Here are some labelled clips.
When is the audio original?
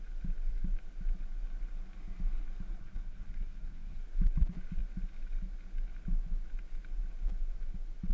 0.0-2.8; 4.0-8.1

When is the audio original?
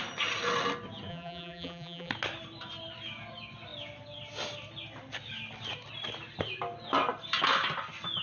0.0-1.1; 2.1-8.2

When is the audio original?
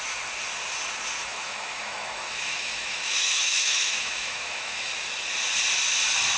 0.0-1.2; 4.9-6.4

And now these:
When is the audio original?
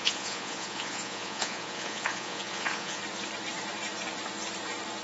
3.0-5.0